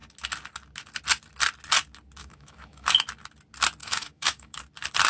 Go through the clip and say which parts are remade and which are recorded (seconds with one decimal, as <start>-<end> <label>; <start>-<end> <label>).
0.0-2.2 recorded; 2.2-2.9 remade; 2.9-3.8 recorded; 3.8-4.6 remade; 4.6-5.1 recorded